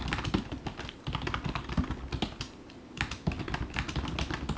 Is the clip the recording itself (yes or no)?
yes